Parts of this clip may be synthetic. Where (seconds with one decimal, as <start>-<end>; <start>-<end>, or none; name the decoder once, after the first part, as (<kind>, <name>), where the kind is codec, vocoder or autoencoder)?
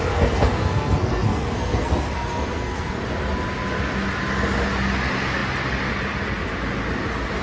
0.0-3.0 (codec, SNAC)